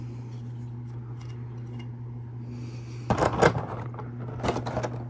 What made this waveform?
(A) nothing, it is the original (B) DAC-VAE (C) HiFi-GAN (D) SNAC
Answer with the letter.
A